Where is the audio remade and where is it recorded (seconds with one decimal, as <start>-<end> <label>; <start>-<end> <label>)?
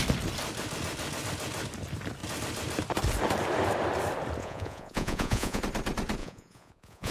0.0-4.4 recorded; 4.4-5.6 remade; 5.6-6.2 recorded; 6.2-7.1 remade